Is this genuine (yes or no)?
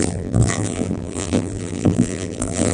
no